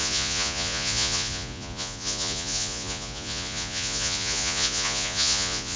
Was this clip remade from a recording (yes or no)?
yes